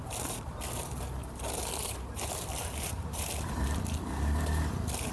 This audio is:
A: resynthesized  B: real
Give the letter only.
A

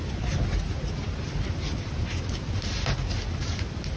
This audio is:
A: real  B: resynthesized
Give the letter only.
A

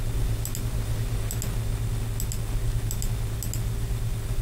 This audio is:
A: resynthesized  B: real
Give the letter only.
B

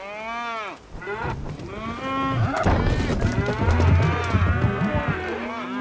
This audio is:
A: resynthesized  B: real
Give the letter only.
B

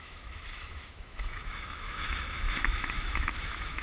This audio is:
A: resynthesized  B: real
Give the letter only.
A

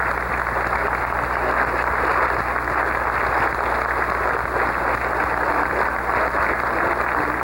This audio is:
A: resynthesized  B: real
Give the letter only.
B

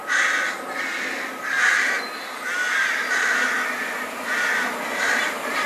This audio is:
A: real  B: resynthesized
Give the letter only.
A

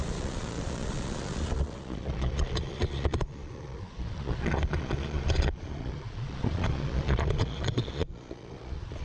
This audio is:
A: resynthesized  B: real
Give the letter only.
A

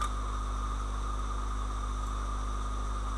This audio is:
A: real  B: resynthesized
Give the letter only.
A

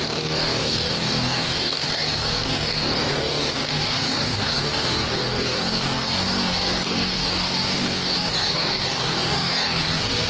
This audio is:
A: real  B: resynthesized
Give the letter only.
B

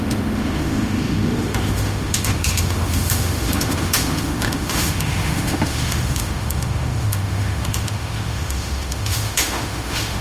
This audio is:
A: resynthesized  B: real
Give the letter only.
A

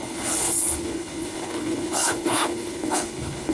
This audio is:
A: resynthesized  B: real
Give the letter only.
A